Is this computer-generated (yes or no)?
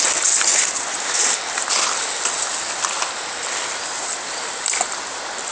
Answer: no